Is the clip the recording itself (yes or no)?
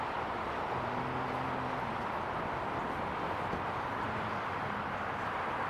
yes